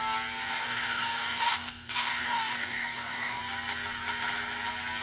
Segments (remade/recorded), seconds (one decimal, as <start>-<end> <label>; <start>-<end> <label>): 0.0-0.4 recorded; 0.4-3.4 remade; 3.4-5.0 recorded